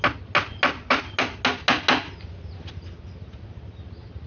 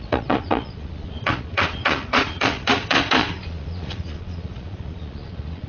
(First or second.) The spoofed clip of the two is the second